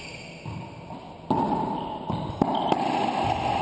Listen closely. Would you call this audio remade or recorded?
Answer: recorded